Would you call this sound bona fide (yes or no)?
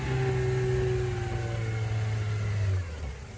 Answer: yes